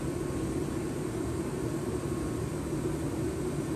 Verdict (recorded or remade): recorded